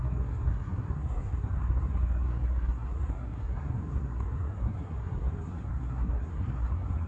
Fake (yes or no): yes